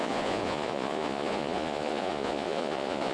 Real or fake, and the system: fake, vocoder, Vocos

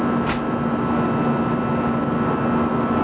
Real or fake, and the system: real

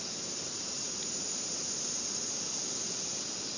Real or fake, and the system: real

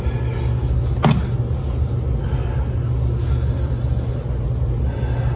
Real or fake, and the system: real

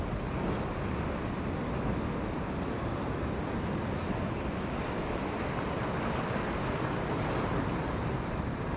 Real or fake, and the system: real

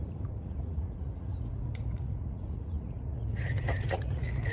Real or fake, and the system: fake, vocoder, Vocos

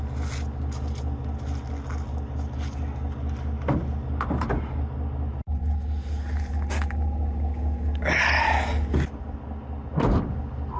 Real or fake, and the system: real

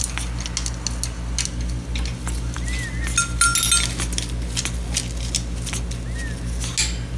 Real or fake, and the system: real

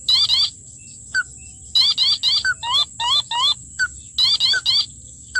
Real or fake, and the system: real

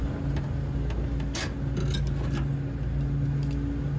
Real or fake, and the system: real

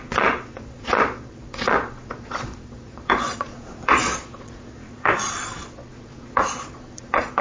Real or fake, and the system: fake, vocoder, Vocos